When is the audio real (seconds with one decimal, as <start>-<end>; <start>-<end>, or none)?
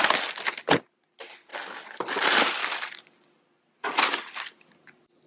0.0-5.3